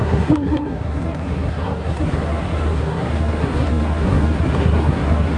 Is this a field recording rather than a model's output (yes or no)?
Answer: no